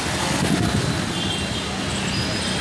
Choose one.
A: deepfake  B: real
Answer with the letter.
B